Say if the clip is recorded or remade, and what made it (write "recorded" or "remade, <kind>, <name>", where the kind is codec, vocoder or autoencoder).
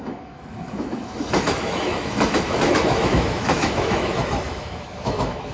remade, autoencoder, DAC-VAE